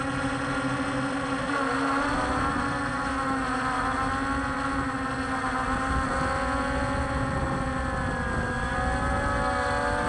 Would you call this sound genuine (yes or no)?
yes